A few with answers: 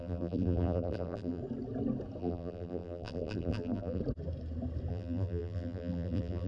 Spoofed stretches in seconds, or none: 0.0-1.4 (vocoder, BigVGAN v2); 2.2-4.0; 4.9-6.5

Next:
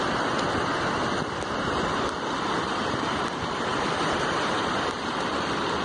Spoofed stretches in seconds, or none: 0.0-5.8 (vocoder, BigVGAN v2)

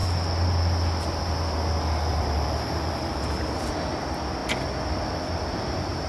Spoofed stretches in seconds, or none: 2.1-3.7 (vocoder, BigVGAN v2)

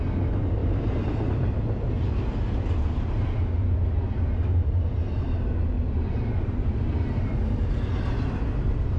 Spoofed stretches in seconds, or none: none